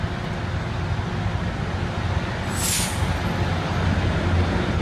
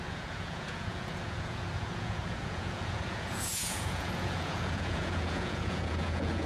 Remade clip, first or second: second